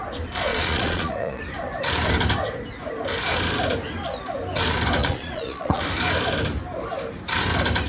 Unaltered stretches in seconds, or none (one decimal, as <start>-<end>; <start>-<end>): 0.0-0.5; 1.4-5.0; 5.8-7.9